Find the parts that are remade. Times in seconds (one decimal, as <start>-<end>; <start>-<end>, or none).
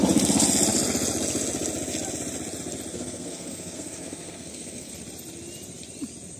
2.9-4.9